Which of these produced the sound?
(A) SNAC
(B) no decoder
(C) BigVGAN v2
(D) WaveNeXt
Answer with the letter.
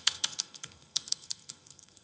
A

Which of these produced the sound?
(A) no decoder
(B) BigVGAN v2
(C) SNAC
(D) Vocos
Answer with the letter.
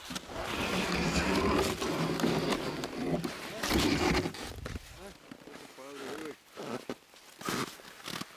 A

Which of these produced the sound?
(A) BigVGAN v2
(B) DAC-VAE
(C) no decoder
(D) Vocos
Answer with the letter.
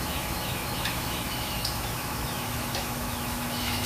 B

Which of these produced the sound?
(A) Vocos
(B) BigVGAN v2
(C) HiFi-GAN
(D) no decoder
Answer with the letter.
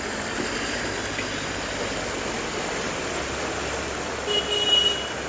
D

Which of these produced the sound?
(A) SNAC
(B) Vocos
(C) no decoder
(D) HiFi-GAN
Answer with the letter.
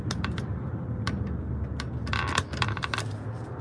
C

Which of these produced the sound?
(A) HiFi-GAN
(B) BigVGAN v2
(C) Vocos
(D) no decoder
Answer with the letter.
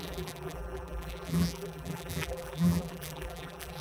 B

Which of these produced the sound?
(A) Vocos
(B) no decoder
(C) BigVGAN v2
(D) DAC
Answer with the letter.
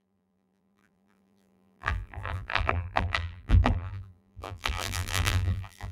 C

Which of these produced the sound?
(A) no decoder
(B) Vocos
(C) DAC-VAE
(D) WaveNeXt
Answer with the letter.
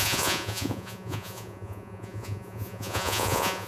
B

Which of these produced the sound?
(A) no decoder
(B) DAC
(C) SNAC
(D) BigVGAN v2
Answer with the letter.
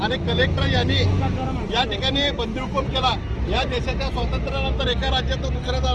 A